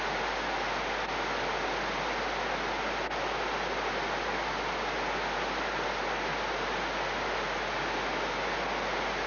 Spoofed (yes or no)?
no